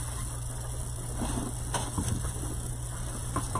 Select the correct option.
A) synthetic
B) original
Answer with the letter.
B